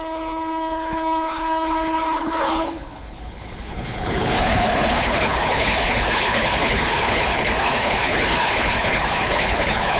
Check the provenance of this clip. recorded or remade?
remade